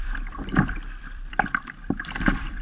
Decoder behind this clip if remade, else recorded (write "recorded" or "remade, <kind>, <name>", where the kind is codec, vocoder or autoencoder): remade, vocoder, BigVGAN v2